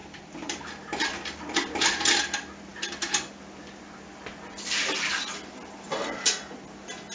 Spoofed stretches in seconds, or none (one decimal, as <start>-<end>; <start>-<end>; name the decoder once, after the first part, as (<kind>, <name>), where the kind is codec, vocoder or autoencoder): 0.0-0.6 (vocoder, BigVGAN v2)